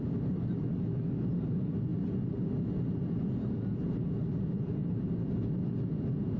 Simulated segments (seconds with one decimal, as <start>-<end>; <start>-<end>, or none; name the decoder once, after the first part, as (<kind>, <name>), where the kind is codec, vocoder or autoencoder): none